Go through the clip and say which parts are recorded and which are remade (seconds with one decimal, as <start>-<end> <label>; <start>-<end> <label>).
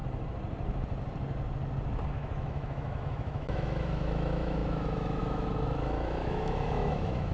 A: 0.0-2.1 recorded; 2.1-7.3 remade